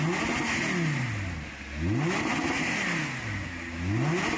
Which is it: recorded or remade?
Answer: recorded